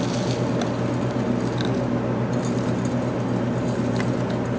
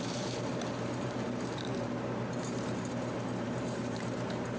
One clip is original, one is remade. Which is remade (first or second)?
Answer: second